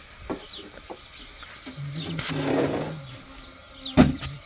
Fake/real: real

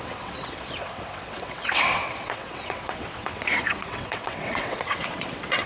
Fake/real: fake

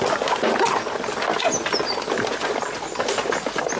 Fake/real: real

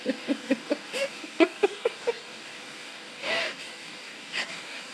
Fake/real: fake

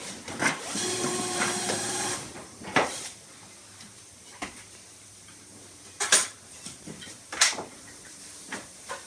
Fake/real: fake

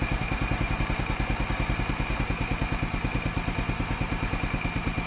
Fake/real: real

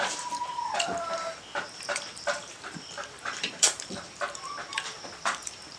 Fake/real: fake